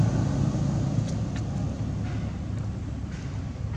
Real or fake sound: real